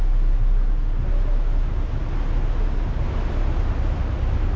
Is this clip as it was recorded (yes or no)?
yes